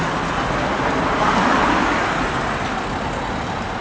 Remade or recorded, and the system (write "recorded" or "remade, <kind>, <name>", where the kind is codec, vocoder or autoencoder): recorded